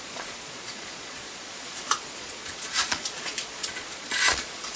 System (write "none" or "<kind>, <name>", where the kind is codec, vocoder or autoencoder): vocoder, Vocos